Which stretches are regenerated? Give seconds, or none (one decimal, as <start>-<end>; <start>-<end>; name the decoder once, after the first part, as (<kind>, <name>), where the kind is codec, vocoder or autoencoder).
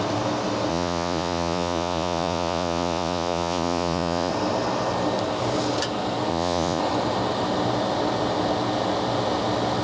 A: 0.7-4.3 (vocoder, Vocos); 6.3-6.8